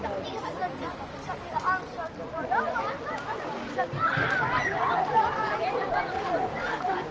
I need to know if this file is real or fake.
real